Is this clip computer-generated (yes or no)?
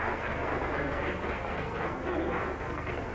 yes